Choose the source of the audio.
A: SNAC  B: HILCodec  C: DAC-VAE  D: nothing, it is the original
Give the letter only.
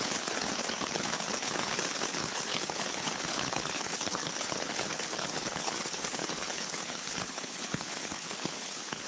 B